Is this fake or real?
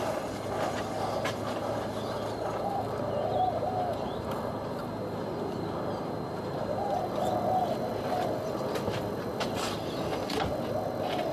real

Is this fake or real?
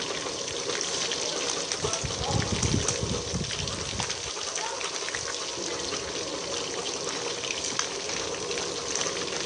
real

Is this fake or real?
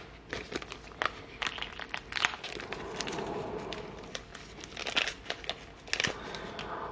real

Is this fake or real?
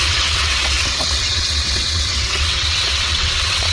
fake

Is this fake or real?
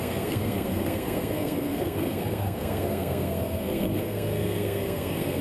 fake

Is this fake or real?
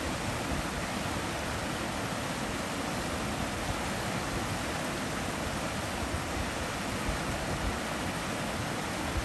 real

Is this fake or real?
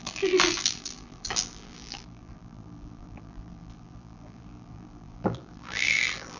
fake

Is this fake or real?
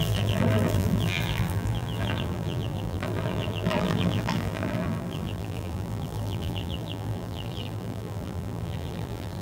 fake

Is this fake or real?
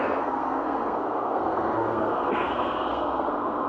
fake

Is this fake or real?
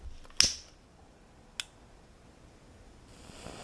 real